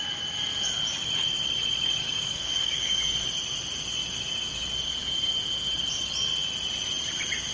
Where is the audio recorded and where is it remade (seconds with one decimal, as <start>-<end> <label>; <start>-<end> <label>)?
0.0-2.0 recorded; 2.0-3.0 remade; 3.0-7.5 recorded

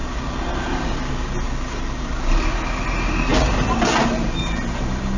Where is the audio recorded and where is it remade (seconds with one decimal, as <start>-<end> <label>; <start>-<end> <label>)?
0.0-5.2 recorded

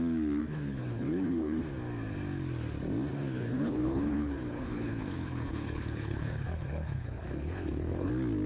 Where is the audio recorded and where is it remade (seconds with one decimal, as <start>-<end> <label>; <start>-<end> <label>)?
0.0-0.4 recorded; 0.4-1.6 remade; 1.6-3.1 recorded; 3.1-8.1 remade; 8.1-8.5 recorded

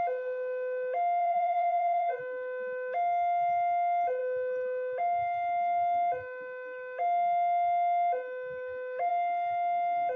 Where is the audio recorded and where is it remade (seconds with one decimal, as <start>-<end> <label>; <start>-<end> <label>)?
0.0-1.2 recorded; 1.2-2.2 remade; 2.2-10.2 recorded

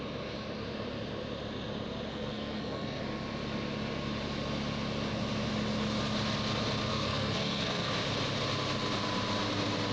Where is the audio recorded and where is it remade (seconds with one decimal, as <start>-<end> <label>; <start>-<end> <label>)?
0.0-2.1 recorded; 2.1-3.0 remade; 3.0-6.9 recorded; 6.9-7.9 remade; 7.9-9.9 recorded

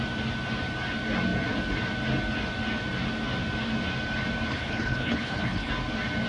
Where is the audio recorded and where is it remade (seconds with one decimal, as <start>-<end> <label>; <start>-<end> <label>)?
0.0-4.5 recorded; 4.5-5.7 remade; 5.7-6.3 recorded